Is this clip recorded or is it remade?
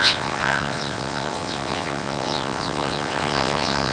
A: remade